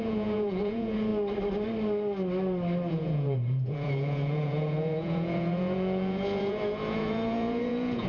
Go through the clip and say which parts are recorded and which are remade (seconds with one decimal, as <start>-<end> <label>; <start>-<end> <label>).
0.0-1.1 remade; 1.1-2.9 recorded; 2.9-8.1 remade

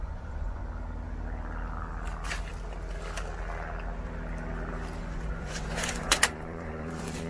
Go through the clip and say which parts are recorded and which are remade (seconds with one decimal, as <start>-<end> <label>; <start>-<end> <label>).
0.0-0.6 remade; 0.6-5.0 recorded; 5.0-7.3 remade

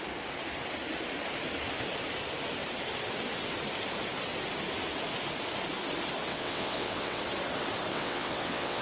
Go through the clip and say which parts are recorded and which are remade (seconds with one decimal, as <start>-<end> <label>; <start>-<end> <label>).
0.0-6.3 recorded; 6.3-7.2 remade; 7.2-7.9 recorded; 7.9-8.8 remade

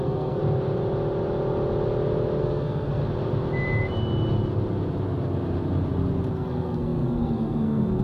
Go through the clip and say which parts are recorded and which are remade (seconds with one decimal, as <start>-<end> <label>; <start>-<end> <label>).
0.0-0.4 remade; 0.4-2.4 recorded; 2.4-3.0 remade; 3.0-6.3 recorded; 6.3-8.0 remade

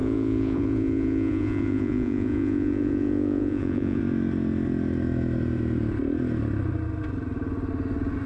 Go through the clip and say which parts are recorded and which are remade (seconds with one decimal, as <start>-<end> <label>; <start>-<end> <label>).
0.0-4.0 remade; 4.0-8.3 recorded

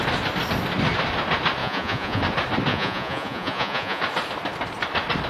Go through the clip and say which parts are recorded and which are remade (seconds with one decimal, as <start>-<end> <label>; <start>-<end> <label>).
0.0-1.6 recorded; 1.6-2.2 remade; 2.2-2.7 recorded; 2.7-4.0 remade; 4.0-5.3 recorded

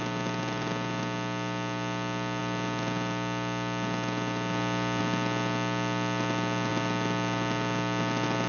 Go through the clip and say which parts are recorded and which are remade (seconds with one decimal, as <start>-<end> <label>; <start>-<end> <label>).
0.0-8.5 recorded